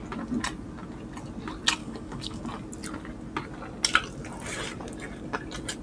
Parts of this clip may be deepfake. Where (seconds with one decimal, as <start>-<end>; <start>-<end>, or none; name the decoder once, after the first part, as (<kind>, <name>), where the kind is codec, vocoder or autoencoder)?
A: 1.8-2.4 (codec, DAC)